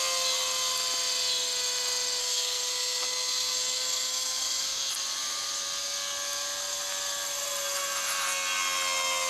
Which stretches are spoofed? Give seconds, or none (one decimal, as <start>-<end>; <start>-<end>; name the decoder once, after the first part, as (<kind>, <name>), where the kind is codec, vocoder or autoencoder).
2.2-4.9 (codec, SNAC)